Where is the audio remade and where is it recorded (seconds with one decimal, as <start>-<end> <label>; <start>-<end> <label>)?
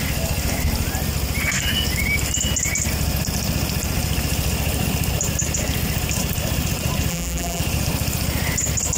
0.0-7.1 recorded; 7.1-7.6 remade; 7.6-9.0 recorded